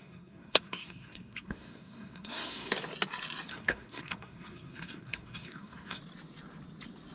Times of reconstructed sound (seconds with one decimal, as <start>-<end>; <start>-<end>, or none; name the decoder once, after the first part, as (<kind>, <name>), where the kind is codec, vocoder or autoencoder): 0.0-2.7 (codec, SNAC); 3.5-6.0

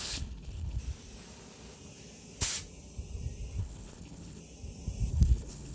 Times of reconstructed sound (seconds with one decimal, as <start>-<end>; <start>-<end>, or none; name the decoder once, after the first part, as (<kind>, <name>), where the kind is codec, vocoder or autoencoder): 0.0-0.8 (codec, HILCodec); 3.6-4.4; 5.1-5.7

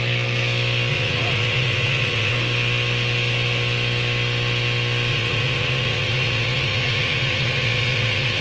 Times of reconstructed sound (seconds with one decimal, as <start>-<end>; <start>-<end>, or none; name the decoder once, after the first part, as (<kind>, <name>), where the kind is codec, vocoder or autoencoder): 0.9-2.3 (vocoder, Vocos); 5.1-8.4

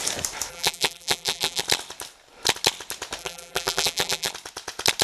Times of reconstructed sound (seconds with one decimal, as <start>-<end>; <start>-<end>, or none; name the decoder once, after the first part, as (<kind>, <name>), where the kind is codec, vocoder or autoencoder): 0.5-1.6 (vocoder, BigVGAN v2); 3.2-4.3